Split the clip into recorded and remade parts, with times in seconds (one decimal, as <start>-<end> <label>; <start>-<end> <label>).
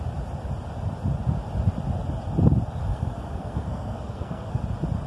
0.0-2.9 recorded; 2.9-4.6 remade; 4.6-5.1 recorded